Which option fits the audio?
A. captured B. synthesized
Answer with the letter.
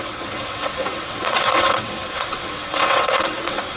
B